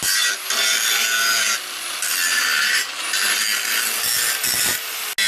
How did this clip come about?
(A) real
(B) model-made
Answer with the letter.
A